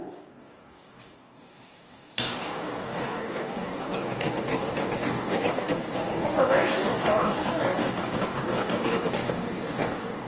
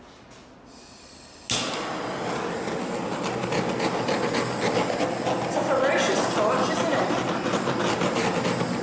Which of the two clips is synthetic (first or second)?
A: first